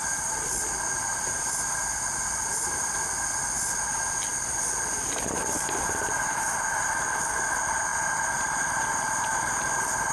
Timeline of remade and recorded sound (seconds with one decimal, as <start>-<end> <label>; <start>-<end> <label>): 0.0-4.3 recorded; 4.3-6.1 remade; 6.1-10.1 recorded